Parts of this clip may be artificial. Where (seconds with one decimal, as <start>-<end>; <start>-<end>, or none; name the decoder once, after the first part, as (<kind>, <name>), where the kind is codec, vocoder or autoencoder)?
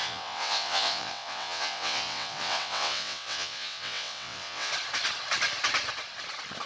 0.0-4.7 (vocoder, WaveNeXt)